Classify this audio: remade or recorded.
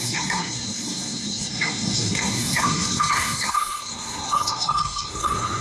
remade